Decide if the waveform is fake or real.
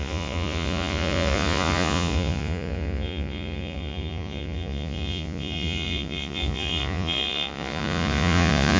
fake